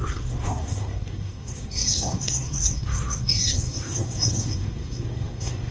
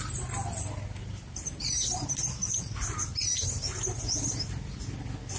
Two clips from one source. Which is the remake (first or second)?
first